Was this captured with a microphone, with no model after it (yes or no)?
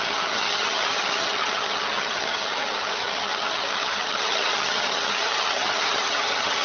no